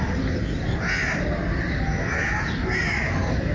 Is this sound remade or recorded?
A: recorded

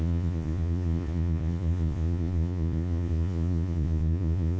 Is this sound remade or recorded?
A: remade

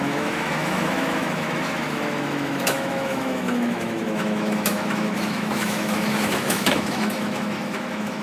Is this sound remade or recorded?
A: remade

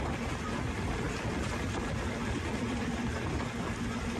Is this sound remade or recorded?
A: recorded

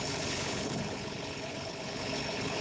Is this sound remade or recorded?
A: remade